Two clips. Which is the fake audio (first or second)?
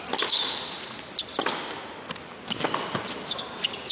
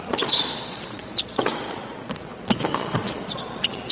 second